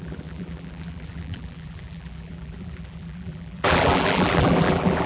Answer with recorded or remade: remade